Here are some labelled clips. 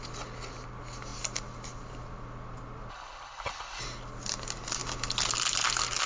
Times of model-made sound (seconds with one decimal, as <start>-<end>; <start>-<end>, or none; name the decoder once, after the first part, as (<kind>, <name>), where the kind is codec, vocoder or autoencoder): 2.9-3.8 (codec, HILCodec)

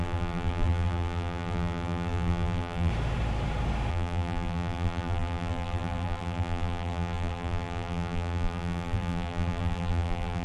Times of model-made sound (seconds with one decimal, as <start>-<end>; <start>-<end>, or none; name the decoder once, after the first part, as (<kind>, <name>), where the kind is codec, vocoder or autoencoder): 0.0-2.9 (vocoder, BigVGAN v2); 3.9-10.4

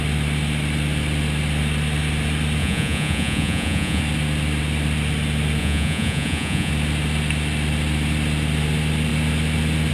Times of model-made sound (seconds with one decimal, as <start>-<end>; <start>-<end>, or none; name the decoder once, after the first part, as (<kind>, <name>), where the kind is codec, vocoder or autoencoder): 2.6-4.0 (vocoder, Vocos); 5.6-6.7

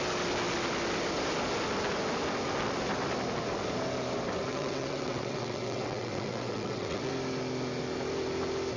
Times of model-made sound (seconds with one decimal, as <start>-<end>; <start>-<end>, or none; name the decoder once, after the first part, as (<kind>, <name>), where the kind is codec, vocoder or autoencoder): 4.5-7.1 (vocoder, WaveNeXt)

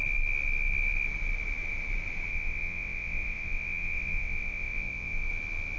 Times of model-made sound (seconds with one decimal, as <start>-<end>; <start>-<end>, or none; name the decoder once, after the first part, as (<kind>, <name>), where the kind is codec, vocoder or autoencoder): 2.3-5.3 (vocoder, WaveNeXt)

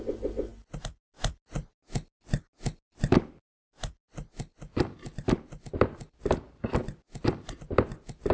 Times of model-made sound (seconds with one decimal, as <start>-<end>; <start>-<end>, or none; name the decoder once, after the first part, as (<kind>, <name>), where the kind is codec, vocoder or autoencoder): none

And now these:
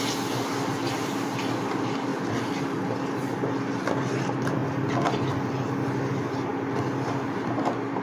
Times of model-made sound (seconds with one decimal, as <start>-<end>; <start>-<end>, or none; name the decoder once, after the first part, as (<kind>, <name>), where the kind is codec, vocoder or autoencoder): none